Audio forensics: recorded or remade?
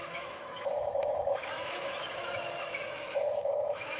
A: remade